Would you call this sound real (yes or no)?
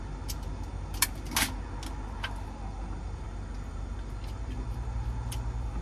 yes